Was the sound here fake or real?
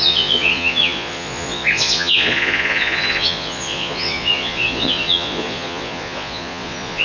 fake